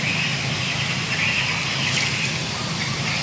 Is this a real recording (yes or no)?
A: yes